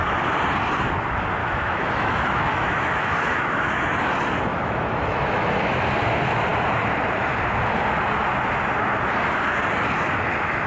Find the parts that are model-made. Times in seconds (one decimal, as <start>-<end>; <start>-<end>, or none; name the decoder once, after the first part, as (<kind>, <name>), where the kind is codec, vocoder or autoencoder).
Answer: 1.4-4.0 (autoencoder, DAC-VAE); 4.5-5.8